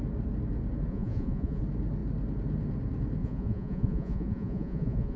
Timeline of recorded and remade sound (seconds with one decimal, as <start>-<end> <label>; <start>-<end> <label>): 0.0-0.9 recorded; 0.9-1.6 remade; 1.6-3.2 recorded; 3.2-5.2 remade